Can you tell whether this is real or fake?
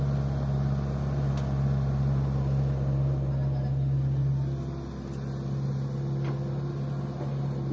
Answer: real